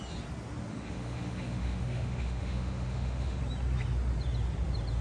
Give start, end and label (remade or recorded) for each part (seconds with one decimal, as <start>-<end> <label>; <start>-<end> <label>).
0.0-0.7 recorded; 0.7-3.4 remade; 3.4-5.0 recorded